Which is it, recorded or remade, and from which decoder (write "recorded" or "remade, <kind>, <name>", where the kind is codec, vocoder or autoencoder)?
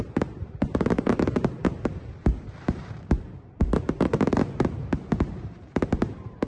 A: remade, vocoder, BigVGAN v2